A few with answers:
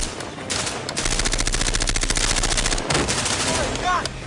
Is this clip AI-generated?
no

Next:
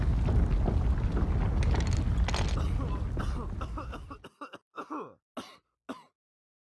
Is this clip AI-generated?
no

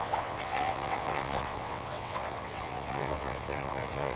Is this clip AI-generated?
yes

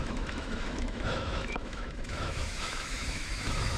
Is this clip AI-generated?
yes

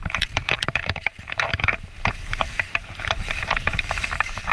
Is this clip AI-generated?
yes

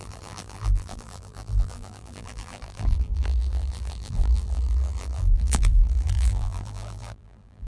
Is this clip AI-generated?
yes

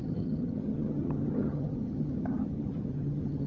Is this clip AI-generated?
yes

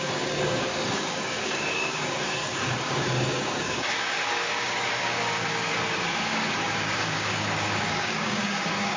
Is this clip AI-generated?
yes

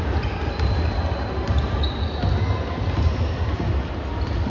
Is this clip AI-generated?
no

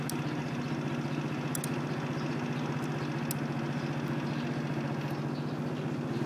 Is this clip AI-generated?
no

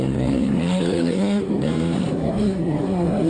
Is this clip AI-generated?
yes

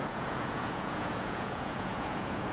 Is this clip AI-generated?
yes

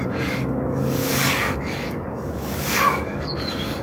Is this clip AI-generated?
yes